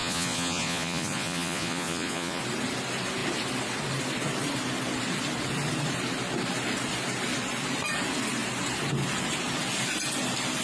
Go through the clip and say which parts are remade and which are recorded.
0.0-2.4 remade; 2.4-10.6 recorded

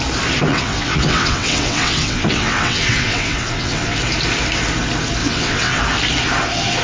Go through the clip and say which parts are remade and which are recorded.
0.0-0.5 recorded; 0.5-4.0 remade; 4.0-5.2 recorded; 5.2-5.8 remade; 5.8-6.8 recorded

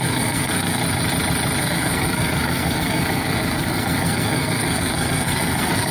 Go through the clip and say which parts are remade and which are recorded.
0.0-0.8 remade; 0.8-1.6 recorded; 1.6-5.9 remade